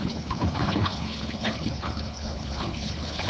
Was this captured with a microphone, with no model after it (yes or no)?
no